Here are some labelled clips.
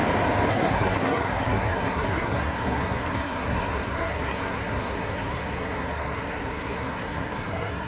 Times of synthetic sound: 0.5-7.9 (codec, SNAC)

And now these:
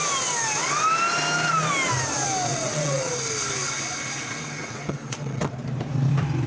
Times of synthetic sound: 2.5-3.1 (vocoder, WaveNeXt); 4.6-5.5